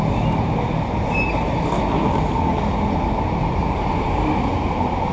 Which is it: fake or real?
real